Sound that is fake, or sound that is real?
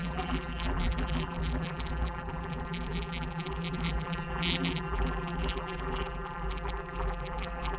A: fake